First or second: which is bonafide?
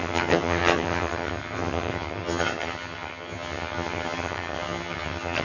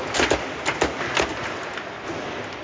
second